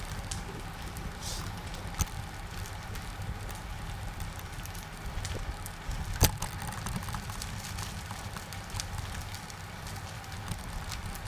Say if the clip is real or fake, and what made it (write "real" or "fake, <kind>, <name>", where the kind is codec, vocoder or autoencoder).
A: real